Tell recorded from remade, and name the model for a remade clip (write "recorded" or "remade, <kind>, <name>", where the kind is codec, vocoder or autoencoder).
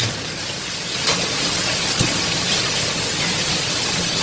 recorded